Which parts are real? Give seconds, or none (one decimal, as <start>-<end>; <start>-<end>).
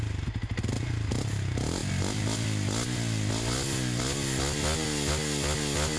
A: 0.0-6.0